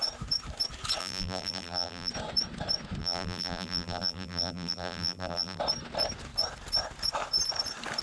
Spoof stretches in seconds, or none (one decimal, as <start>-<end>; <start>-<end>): 1.0-2.1; 3.0-5.6